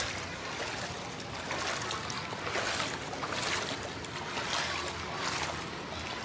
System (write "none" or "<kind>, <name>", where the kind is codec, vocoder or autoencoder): none